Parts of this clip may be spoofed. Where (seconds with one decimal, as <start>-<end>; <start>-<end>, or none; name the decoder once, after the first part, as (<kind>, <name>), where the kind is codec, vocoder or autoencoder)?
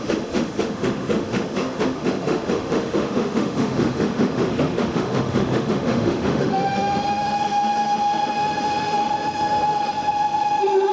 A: 0.0-10.9 (autoencoder, DAC-VAE)